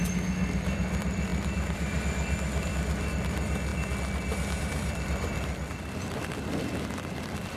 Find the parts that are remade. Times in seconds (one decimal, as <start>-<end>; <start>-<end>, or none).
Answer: 0.0-3.7; 4.6-7.6